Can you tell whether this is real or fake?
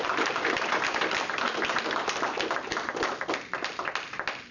real